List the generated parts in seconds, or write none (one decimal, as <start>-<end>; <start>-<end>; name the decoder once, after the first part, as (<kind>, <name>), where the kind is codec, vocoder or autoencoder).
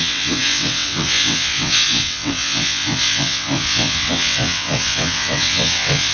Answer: 0.0-6.1 (vocoder, WaveNeXt)